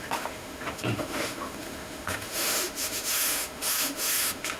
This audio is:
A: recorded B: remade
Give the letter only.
B